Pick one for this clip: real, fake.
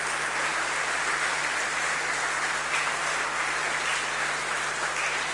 real